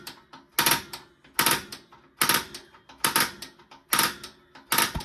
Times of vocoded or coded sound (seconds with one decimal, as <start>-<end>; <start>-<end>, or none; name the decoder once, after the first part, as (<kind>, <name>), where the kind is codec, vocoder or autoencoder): none